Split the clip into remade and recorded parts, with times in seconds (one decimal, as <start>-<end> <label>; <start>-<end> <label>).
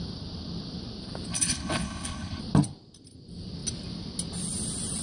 0.0-1.3 recorded; 1.3-2.4 remade; 2.4-5.0 recorded